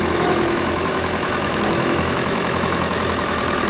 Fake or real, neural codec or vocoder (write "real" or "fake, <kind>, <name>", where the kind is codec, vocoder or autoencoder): fake, autoencoder, DAC-VAE